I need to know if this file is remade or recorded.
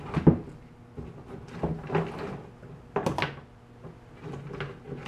recorded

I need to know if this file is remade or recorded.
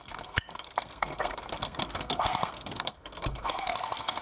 remade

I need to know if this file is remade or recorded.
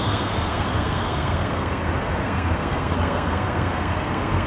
remade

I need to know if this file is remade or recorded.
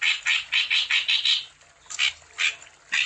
recorded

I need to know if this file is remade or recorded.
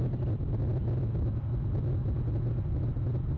recorded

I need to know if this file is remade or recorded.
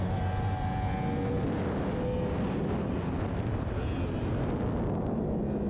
recorded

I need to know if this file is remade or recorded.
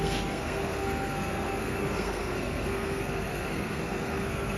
remade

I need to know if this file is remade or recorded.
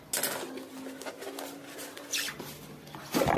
recorded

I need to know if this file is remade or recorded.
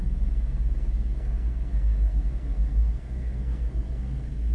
remade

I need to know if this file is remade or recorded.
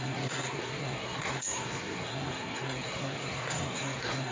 remade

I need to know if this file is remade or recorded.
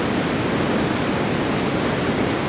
recorded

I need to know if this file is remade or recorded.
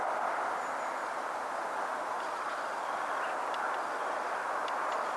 recorded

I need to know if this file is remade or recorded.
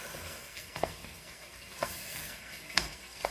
remade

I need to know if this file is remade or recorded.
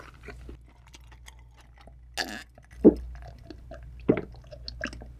recorded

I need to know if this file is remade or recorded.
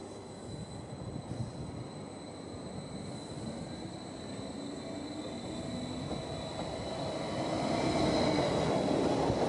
recorded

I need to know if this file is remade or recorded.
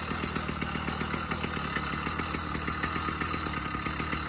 recorded